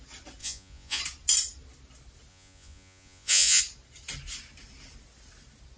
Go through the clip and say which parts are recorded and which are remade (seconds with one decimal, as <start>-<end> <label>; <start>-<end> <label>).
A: 0.0-0.4 recorded; 0.4-1.0 remade; 1.0-2.3 recorded; 2.3-3.6 remade; 3.6-5.8 recorded